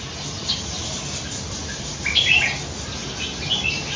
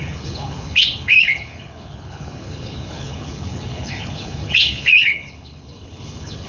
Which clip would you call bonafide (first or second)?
first